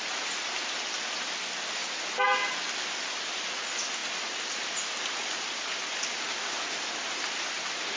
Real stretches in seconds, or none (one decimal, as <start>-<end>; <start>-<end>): 0.0-8.0